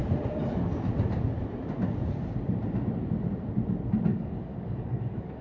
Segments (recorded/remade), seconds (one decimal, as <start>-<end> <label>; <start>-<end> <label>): 0.0-4.1 recorded; 4.1-5.4 remade